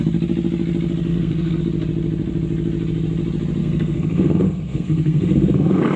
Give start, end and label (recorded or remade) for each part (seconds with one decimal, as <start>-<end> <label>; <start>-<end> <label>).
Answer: 0.0-1.1 recorded; 1.1-1.6 remade; 1.6-3.6 recorded; 3.6-6.0 remade